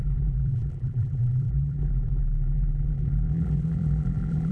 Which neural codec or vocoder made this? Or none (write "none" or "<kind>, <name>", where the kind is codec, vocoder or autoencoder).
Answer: vocoder, BigVGAN v2